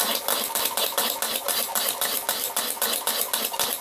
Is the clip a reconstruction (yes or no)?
no